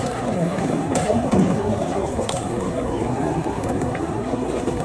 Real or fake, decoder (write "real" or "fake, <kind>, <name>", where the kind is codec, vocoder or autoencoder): fake, codec, SNAC